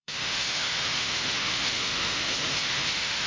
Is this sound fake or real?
fake